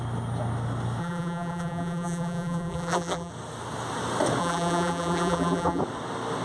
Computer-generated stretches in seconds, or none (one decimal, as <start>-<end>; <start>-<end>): 1.0-3.3; 4.4-5.8